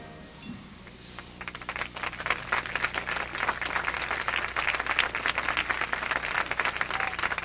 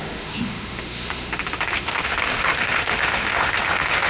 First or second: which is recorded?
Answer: first